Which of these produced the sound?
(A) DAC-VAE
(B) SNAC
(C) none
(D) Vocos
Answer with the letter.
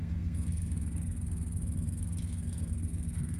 B